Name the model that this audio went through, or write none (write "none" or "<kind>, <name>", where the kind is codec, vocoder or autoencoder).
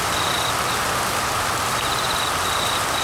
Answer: none